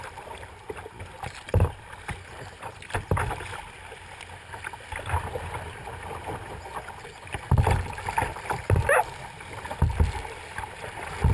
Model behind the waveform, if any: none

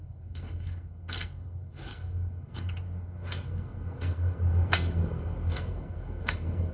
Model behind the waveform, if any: codec, SNAC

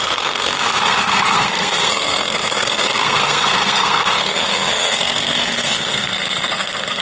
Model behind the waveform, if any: codec, SNAC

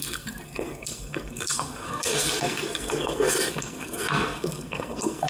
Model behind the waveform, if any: codec, SNAC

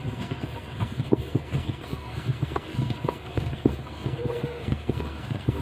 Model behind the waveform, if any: codec, SNAC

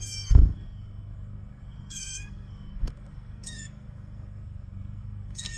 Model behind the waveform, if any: codec, SNAC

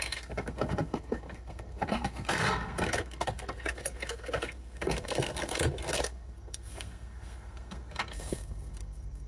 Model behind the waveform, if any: codec, SNAC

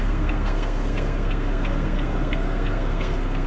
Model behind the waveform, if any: codec, SNAC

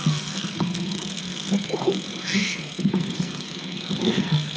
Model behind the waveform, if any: codec, SNAC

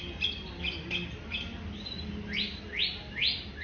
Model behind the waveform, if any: none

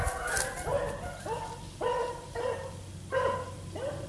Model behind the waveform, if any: none